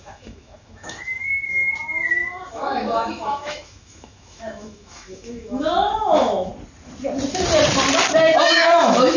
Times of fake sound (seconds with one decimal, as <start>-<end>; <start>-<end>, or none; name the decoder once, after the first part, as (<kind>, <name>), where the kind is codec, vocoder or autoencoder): 0.0-1.2 (autoencoder, DAC-VAE); 2.1-6.5; 8.4-9.2